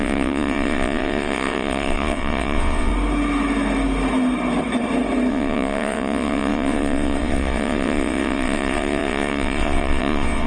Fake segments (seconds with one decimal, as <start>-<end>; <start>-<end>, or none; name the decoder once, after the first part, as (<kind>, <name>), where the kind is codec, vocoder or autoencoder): 0.0-2.9 (vocoder, WaveNeXt); 5.3-10.5